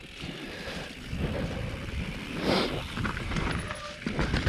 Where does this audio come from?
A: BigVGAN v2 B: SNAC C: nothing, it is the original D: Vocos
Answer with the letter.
A